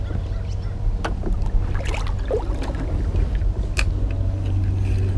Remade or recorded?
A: recorded